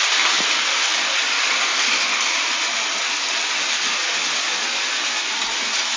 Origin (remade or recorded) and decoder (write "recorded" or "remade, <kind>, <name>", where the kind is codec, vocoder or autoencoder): recorded